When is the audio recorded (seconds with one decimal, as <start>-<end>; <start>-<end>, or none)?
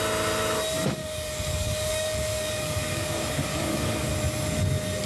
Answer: 0.0-1.0; 4.1-5.1